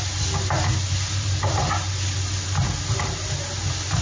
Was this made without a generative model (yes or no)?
yes